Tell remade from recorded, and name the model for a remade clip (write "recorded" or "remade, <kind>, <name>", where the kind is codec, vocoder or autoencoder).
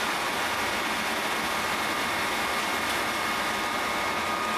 recorded